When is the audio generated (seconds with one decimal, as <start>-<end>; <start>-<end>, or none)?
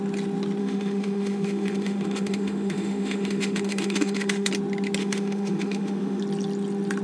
0.6-4.5; 5.0-6.2